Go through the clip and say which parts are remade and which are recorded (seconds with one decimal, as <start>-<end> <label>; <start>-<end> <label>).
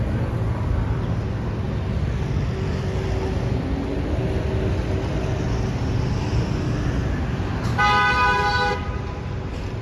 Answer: 0.0-9.8 recorded